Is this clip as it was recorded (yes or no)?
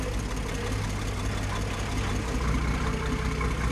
yes